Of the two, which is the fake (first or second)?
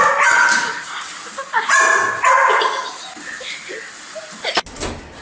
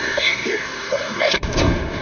second